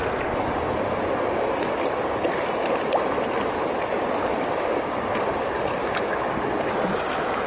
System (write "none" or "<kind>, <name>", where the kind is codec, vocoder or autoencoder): none